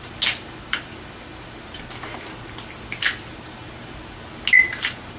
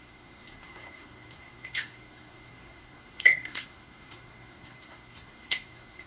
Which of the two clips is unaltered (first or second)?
first